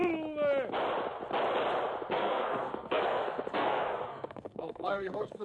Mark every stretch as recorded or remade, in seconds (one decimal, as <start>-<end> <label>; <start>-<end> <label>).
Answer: 0.0-2.1 recorded; 2.1-5.4 remade